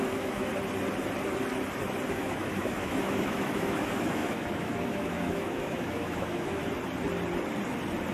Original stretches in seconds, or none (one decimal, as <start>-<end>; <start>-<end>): 0.5-2.1; 6.6-8.1